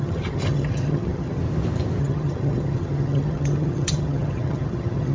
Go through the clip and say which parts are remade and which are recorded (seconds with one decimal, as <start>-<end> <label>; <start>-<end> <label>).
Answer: 0.0-1.4 remade; 1.4-2.0 recorded; 2.0-5.1 remade